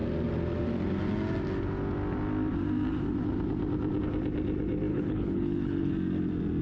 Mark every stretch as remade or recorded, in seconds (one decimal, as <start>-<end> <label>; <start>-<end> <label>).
0.0-4.9 recorded; 4.9-5.9 remade; 5.9-6.6 recorded